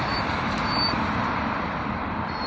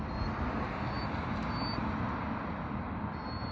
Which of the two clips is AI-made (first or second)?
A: first